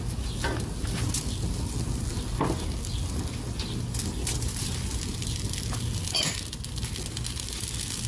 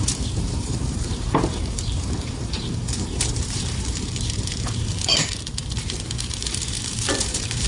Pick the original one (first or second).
first